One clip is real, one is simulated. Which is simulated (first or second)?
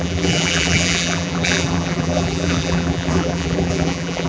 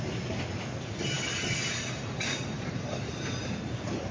first